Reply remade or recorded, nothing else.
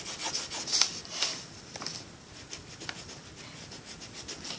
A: recorded